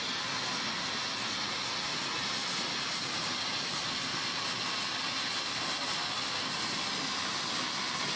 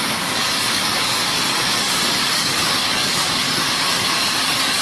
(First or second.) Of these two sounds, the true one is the first